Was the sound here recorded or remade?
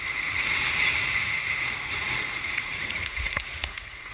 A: remade